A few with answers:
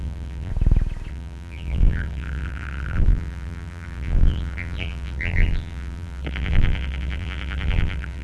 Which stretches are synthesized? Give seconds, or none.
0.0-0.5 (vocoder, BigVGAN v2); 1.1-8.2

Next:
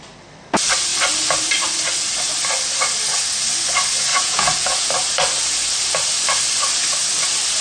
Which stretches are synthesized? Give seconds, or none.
4.1-4.9 (vocoder, Vocos)

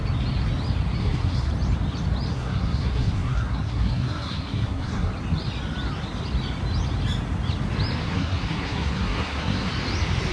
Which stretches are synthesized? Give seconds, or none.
1.0-1.5 (codec, SNAC); 2.3-5.1; 8.0-9.7

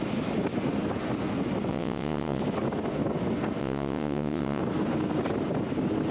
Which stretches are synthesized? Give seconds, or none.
1.7-2.4 (vocoder, WaveNeXt); 3.6-4.6

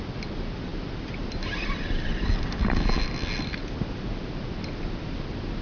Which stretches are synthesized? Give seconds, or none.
none